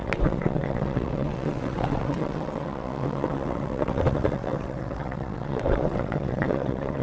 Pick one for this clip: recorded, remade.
remade